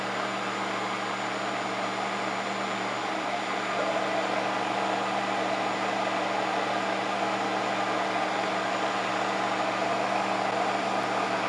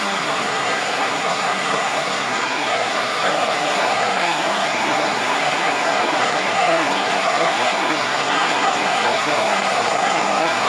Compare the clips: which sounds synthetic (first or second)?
second